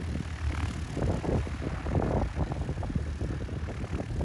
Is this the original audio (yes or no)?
yes